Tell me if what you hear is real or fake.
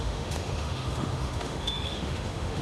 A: fake